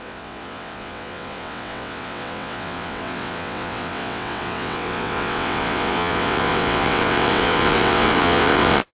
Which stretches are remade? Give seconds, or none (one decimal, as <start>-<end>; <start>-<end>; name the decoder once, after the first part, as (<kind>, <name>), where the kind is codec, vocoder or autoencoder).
0.0-8.9 (vocoder, WaveNeXt)